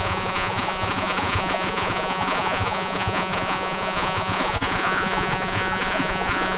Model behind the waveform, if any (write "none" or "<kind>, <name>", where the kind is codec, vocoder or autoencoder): vocoder, Vocos